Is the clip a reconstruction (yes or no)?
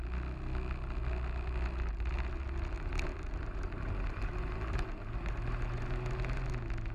no